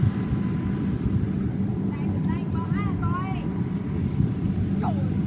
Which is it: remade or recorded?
recorded